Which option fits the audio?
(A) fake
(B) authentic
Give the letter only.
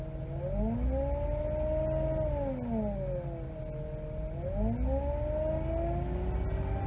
B